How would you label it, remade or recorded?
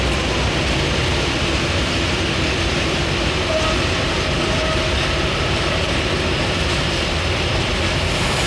recorded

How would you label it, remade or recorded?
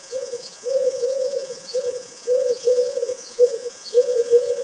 remade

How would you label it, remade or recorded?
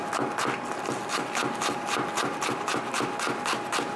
recorded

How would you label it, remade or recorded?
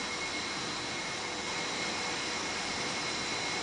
remade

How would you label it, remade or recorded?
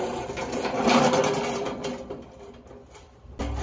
recorded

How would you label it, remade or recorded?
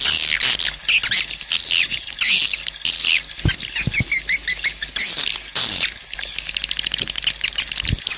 recorded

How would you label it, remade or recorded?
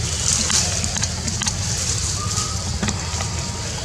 recorded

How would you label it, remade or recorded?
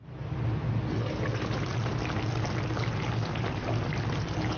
recorded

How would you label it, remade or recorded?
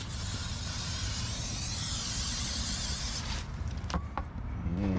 remade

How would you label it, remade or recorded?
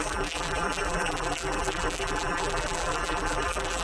remade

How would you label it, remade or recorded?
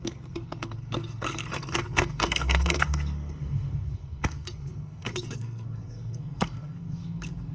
remade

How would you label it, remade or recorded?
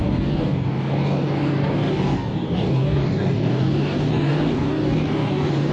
remade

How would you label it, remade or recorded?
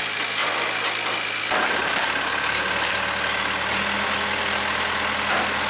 recorded